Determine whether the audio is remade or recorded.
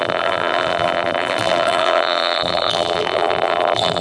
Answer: remade